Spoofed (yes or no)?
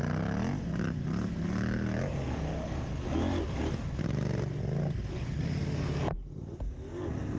no